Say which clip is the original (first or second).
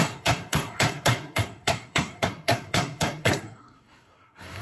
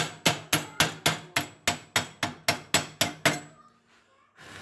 second